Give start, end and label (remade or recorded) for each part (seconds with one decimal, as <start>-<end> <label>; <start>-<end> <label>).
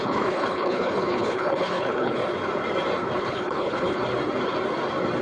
0.0-2.2 remade; 2.2-3.2 recorded; 3.2-4.0 remade; 4.0-5.2 recorded